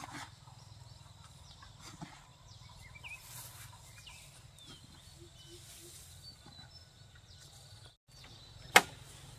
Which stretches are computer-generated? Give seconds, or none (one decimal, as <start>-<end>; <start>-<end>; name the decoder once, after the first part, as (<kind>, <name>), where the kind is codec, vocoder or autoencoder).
none